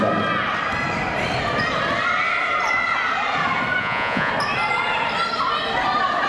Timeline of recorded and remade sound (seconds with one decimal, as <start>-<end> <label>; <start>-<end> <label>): 0.0-3.8 recorded; 3.8-4.3 remade; 4.3-6.3 recorded